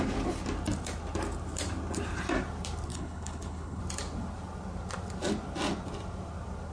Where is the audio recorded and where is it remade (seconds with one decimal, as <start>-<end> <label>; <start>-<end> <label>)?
0.0-2.9 recorded; 2.9-3.8 remade; 3.8-6.7 recorded